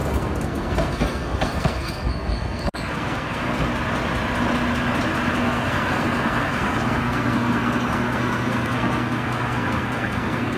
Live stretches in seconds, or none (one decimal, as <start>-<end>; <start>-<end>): 3.7-5.4